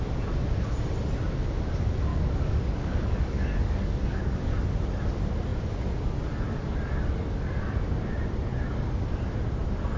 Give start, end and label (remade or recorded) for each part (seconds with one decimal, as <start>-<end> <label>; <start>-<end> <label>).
0.0-2.1 recorded; 2.1-4.5 remade; 4.5-10.0 recorded